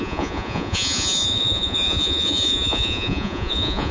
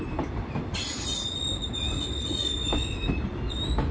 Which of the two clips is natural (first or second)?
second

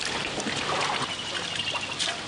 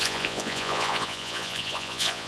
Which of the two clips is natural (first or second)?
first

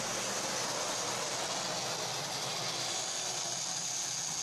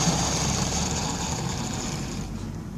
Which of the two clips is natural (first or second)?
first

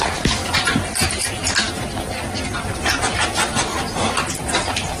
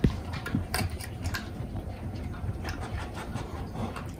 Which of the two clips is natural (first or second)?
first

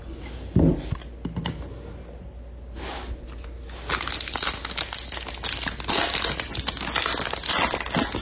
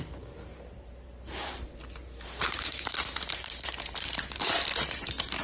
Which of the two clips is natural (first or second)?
first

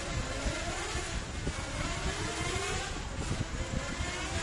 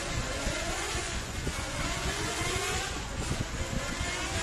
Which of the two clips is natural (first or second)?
first